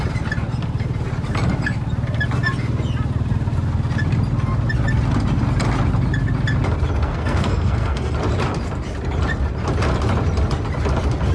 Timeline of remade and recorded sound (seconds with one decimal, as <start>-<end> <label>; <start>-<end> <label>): 0.0-7.0 recorded; 7.0-8.1 remade; 8.1-11.3 recorded

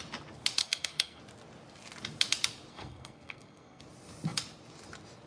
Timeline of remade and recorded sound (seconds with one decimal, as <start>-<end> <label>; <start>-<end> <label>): 0.0-0.6 recorded; 0.6-1.2 remade; 1.2-2.7 recorded; 2.7-3.8 remade; 3.8-5.3 recorded

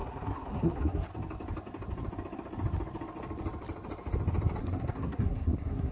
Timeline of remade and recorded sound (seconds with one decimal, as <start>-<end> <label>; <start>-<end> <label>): 0.0-1.1 remade; 1.1-4.6 recorded; 4.6-5.9 remade

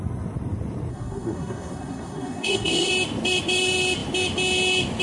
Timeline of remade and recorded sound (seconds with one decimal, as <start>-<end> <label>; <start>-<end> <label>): 0.0-0.9 recorded; 0.9-2.9 remade; 2.9-5.0 recorded

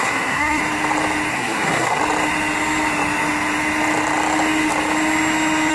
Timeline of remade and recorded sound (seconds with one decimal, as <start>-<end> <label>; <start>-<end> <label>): 0.0-0.6 remade; 0.6-1.3 recorded; 1.3-2.0 remade; 2.0-5.7 recorded